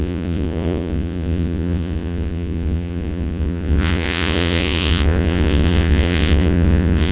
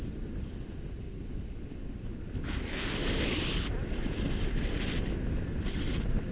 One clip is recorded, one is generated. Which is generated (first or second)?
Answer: first